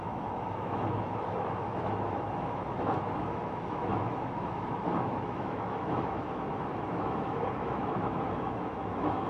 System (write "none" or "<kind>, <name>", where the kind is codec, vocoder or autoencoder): autoencoder, DAC-VAE